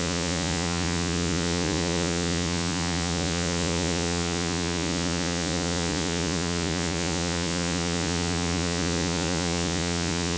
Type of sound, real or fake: fake